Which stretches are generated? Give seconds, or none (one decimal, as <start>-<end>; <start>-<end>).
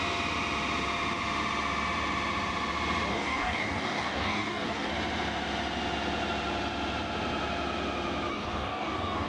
3.1-4.9; 8.3-9.3